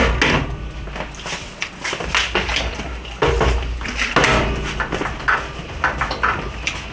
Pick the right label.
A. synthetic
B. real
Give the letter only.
B